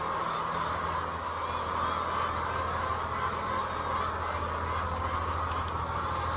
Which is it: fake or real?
real